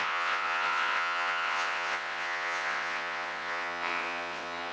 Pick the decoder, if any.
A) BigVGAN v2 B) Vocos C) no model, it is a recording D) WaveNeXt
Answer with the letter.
D